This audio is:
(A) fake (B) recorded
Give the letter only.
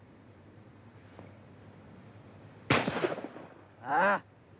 A